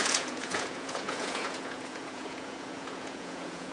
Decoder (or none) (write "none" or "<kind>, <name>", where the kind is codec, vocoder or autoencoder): vocoder, Vocos